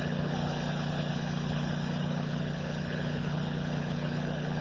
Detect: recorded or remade remade